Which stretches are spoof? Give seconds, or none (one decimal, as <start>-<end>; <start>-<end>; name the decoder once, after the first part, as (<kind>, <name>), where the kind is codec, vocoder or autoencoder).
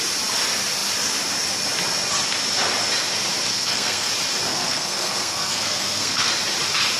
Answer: 3.5-4.1 (codec, SNAC); 4.5-6.3